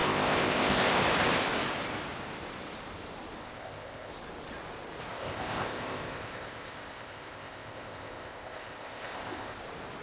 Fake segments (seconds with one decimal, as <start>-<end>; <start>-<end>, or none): 0.0-1.0; 3.4-4.1; 5.1-9.6